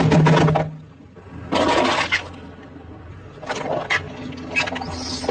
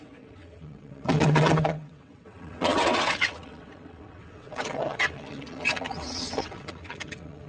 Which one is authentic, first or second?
first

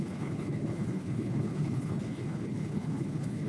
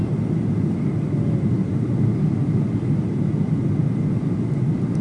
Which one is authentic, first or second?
second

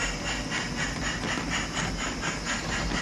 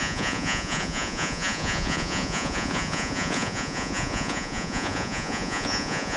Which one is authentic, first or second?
first